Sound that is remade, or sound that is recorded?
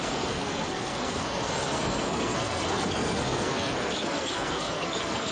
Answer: remade